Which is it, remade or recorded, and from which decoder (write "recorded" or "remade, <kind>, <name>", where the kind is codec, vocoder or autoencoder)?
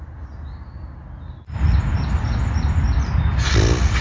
recorded